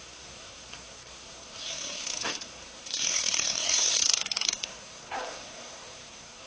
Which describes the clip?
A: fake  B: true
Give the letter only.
A